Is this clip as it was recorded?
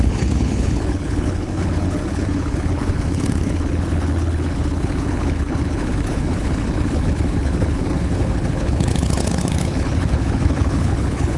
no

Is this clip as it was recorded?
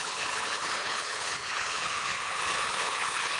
no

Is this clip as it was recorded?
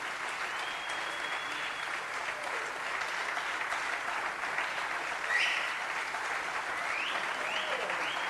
yes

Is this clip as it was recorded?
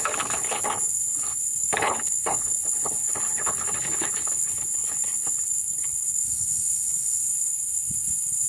no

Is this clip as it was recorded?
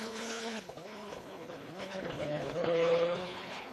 no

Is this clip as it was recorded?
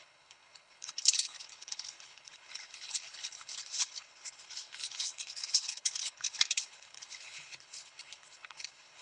no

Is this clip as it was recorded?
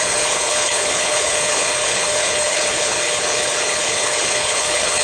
no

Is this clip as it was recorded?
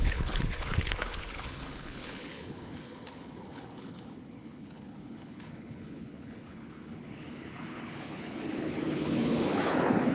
no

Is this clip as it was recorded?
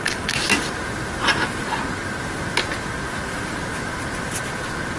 yes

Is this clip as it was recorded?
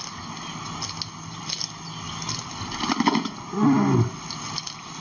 yes